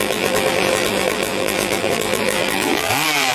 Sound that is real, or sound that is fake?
fake